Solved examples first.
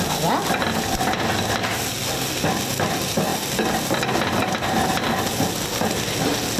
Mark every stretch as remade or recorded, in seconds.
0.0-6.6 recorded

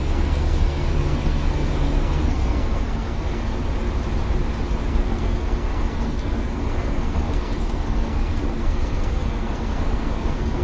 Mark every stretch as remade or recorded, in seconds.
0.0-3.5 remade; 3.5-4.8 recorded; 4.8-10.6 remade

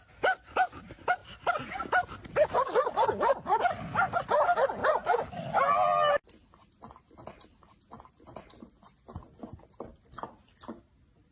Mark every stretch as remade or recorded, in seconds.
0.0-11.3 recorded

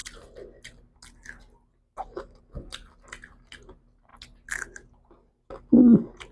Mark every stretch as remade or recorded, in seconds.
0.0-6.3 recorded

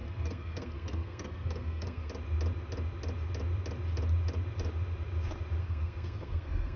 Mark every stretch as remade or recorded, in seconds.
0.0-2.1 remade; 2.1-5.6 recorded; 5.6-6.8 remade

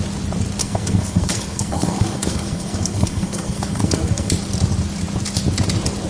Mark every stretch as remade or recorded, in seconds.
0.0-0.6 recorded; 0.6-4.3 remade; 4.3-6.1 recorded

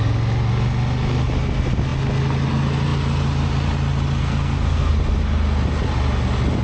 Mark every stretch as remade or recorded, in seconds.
0.0-4.2 recorded; 4.2-4.9 remade; 4.9-6.6 recorded